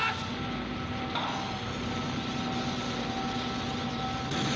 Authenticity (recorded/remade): recorded